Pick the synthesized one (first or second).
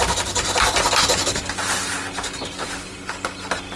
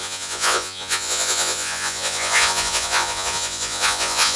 second